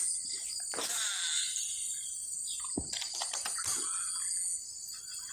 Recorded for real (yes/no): yes